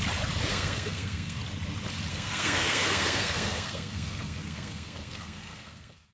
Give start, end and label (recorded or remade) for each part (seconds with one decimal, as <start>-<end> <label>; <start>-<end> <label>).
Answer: 0.0-0.5 recorded; 0.5-1.4 remade; 1.4-2.1 recorded; 2.1-6.1 remade